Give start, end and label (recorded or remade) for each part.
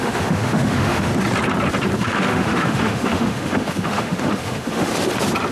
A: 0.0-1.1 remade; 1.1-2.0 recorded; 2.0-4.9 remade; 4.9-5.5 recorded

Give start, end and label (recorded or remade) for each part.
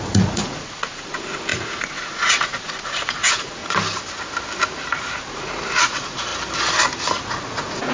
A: 0.0-3.6 remade; 3.6-5.2 recorded; 5.2-6.3 remade; 6.3-7.2 recorded; 7.2-7.9 remade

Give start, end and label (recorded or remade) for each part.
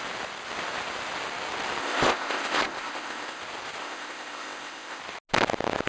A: 0.0-1.8 recorded; 1.8-3.4 remade; 3.4-3.8 recorded; 3.8-5.0 remade; 5.0-5.9 recorded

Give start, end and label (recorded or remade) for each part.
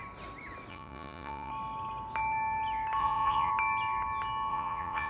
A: 0.0-0.7 recorded; 0.7-1.5 remade; 1.5-3.0 recorded; 3.0-3.5 remade; 3.5-4.5 recorded; 4.5-5.1 remade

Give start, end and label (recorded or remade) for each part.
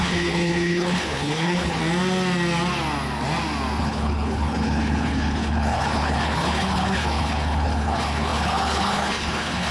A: 0.0-1.8 remade; 1.8-3.8 recorded; 3.8-9.7 remade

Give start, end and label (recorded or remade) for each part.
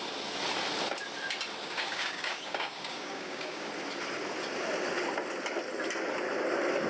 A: 0.0-1.6 recorded; 1.6-3.7 remade; 3.7-6.9 recorded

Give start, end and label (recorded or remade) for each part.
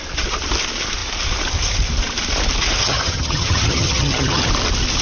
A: 0.0-2.8 recorded; 2.8-4.5 remade; 4.5-5.0 recorded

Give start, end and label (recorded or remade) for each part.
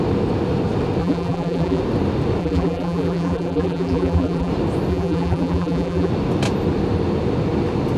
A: 0.0-1.0 recorded; 1.0-1.8 remade; 1.8-2.4 recorded; 2.4-4.5 remade; 4.5-4.9 recorded; 4.9-6.1 remade; 6.1-8.0 recorded